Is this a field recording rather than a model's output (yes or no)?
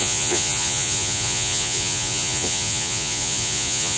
no